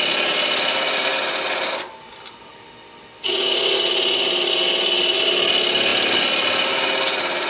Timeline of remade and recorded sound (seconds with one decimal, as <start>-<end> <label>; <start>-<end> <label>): 0.0-7.5 recorded